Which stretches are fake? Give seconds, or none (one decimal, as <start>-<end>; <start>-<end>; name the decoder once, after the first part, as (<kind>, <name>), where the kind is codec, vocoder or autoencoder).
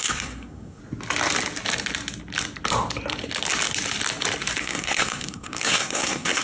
0.0-0.8 (codec, SNAC); 4.6-6.4